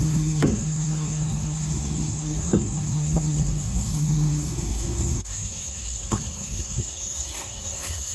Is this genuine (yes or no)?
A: no